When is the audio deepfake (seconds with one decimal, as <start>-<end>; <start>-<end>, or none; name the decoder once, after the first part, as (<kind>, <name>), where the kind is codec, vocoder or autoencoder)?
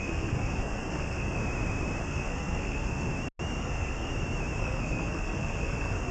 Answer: 0.0-1.4 (codec, SNAC); 2.0-3.1; 3.6-4.1; 4.6-6.1